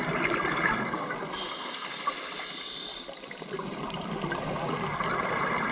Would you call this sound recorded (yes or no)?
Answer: yes